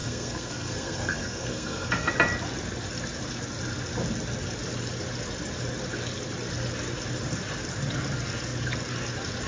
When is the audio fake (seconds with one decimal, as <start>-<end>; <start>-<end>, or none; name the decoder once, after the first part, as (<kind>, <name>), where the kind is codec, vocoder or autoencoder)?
0.0-2.1 (codec, SNAC)